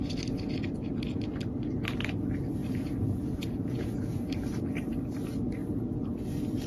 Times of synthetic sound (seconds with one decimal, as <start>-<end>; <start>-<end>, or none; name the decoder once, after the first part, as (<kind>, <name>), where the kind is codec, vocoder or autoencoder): 2.6-4.3 (vocoder, Vocos)